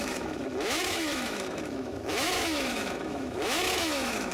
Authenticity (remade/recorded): remade